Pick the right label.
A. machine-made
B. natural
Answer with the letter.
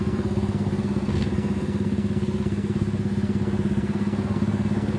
A